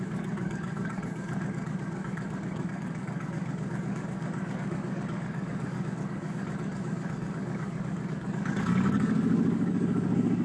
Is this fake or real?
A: fake